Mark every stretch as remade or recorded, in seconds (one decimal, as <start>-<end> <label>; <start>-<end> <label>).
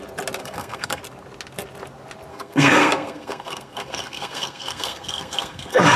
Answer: 0.0-0.4 recorded; 0.4-1.0 remade; 1.0-2.3 recorded; 2.3-6.0 remade